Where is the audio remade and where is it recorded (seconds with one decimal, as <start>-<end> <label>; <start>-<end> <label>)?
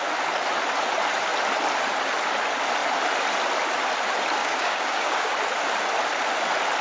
0.0-4.4 recorded; 4.4-5.3 remade; 5.3-6.8 recorded